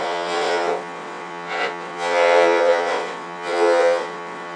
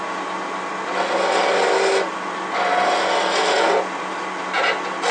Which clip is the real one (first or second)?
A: second